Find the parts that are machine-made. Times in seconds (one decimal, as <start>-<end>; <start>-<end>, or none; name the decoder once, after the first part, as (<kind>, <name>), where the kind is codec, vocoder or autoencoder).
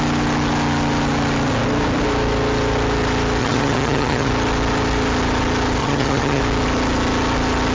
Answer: 3.4-4.3 (vocoder, HiFi-GAN); 5.8-6.4